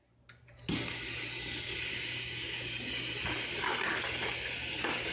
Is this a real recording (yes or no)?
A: yes